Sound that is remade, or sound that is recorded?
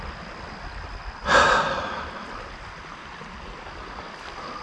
recorded